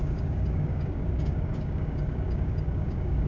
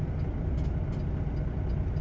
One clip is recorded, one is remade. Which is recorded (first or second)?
second